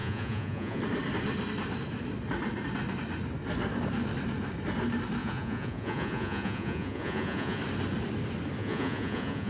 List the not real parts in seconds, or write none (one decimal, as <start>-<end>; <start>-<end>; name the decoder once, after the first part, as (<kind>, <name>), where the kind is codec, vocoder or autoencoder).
0.0-0.8 (vocoder, Vocos); 5.2-7.6; 8.6-9.5